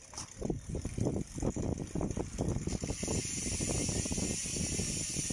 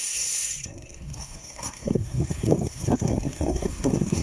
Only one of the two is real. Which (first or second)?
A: first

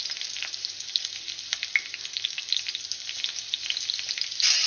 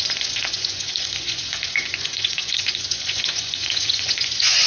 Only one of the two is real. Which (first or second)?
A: first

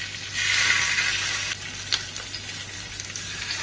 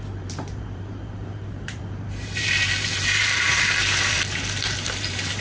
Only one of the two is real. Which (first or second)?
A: first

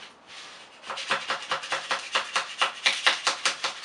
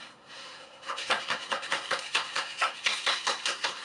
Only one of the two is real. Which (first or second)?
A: first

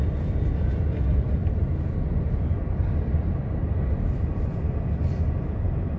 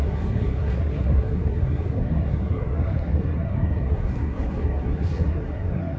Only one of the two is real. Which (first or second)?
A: first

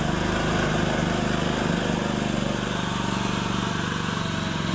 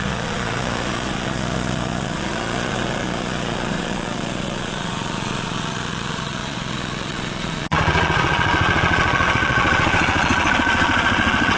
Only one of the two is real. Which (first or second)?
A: first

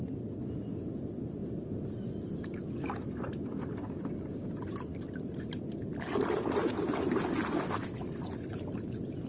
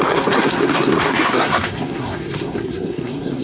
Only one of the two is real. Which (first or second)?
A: first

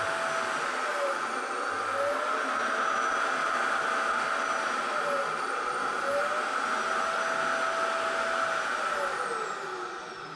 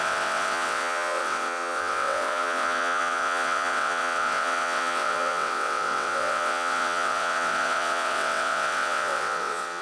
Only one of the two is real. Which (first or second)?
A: first